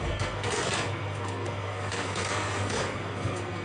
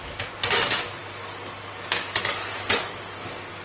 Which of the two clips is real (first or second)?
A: second